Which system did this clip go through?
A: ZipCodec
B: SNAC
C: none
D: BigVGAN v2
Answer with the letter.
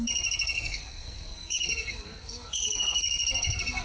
B